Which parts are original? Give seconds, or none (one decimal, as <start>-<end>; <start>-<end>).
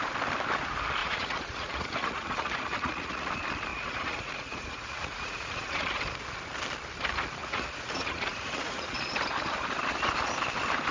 0.0-1.0; 3.3-3.7; 6.0-7.4; 8.8-10.9